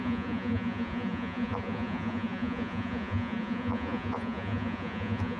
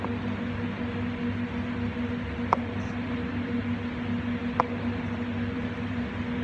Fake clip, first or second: first